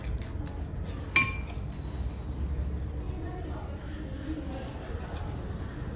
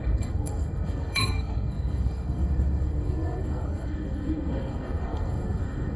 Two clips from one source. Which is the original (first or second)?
first